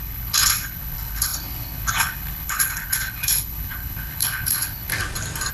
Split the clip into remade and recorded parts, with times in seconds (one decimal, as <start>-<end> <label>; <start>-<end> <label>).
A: 0.0-4.9 remade; 4.9-5.5 recorded